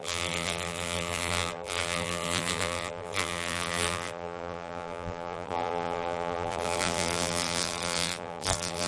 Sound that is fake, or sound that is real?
fake